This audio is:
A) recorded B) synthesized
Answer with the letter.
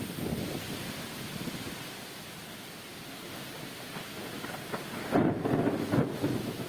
A